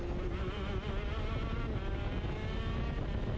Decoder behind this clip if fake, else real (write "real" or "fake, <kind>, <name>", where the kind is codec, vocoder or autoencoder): real